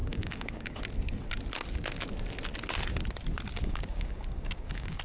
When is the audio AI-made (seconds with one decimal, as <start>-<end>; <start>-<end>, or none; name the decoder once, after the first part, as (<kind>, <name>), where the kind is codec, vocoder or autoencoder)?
0.0-0.8 (codec, DAC); 3.5-5.0